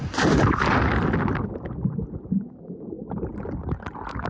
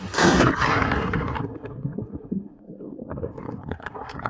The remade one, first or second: second